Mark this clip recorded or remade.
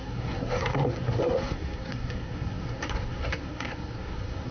remade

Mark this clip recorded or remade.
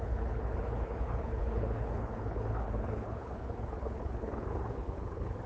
remade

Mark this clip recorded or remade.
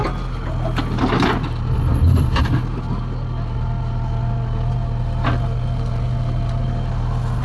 recorded